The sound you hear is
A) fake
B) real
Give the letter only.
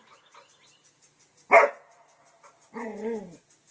B